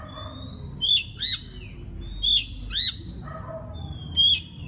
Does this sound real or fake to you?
real